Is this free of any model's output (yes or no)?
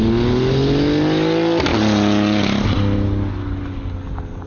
yes